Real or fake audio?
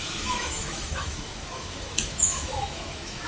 fake